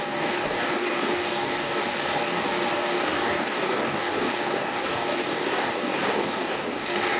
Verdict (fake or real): fake